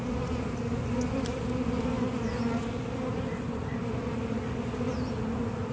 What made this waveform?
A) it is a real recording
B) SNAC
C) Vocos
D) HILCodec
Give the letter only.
A